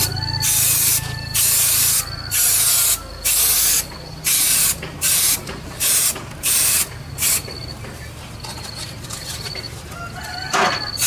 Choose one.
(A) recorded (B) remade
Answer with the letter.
A